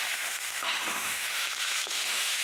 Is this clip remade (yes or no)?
yes